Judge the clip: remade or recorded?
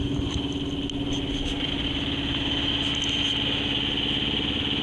recorded